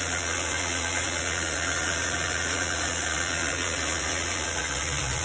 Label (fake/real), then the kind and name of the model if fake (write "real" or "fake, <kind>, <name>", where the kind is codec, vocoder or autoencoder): fake, vocoder, Vocos